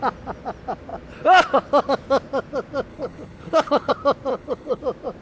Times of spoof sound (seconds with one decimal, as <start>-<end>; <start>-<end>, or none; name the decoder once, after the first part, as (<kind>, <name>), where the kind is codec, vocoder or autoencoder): 2.9-3.9 (codec, HILCodec); 4.3-4.8

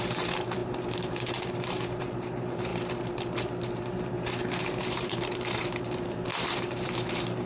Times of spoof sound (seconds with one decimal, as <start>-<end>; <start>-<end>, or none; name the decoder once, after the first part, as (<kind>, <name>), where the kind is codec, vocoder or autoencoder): 0.0-7.5 (vocoder, BigVGAN v2)